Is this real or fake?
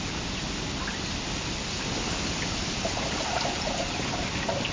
fake